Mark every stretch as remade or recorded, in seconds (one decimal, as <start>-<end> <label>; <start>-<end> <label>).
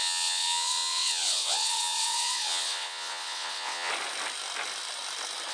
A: 0.0-3.9 remade; 3.9-5.5 recorded